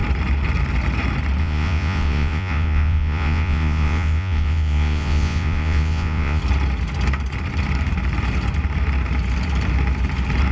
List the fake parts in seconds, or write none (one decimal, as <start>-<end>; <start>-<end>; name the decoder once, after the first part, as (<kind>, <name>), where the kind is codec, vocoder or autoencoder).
1.4-6.4 (vocoder, Vocos)